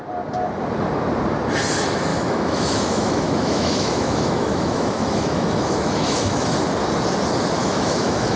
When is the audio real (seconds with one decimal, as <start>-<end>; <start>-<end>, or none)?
0.0-2.1; 6.5-7.6